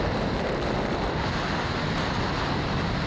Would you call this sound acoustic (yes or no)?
yes